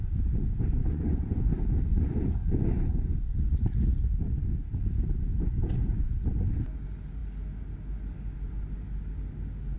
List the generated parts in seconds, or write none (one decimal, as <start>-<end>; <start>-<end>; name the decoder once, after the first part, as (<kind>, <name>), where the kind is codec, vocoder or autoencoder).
0.8-1.5 (vocoder, Vocos); 1.9-3.2